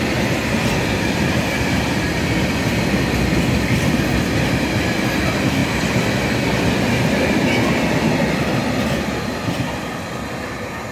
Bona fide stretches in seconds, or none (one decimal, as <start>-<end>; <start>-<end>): 0.0-10.9